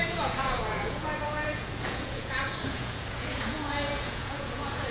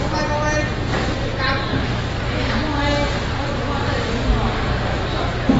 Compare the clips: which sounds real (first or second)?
second